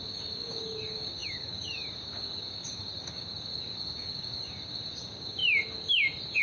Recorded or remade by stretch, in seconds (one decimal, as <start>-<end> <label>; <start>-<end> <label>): 0.0-5.4 remade; 5.4-6.4 recorded